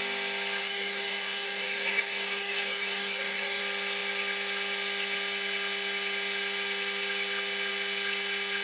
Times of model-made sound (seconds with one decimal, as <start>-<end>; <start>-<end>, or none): 0.6-3.6